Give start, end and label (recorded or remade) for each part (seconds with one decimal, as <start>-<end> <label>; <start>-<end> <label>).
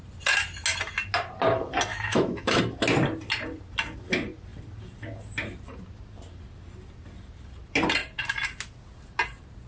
0.0-1.9 recorded; 1.9-2.6 remade; 2.6-9.7 recorded